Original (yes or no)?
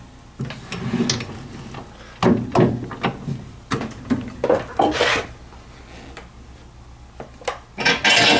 yes